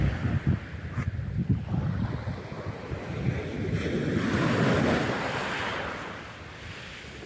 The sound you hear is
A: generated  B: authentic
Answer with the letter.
B